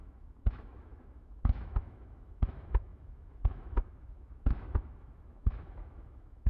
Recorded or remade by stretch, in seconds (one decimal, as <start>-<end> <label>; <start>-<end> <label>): 0.0-6.5 remade